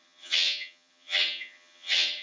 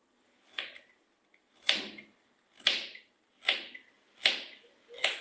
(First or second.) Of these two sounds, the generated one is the first